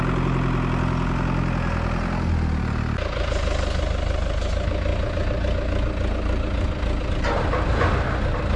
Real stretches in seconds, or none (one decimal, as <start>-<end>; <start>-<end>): 0.0-8.6